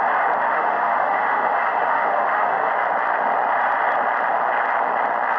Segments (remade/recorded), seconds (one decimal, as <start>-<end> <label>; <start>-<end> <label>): 0.0-0.5 recorded; 0.5-2.7 remade; 2.7-5.4 recorded